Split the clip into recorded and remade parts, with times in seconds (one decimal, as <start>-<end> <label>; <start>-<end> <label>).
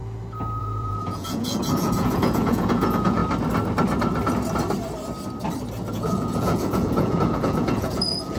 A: 0.0-0.6 recorded; 0.6-3.2 remade; 3.2-5.9 recorded; 5.9-8.4 remade